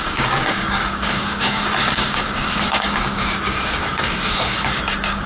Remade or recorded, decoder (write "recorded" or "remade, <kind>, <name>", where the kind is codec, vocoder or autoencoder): remade, codec, DAC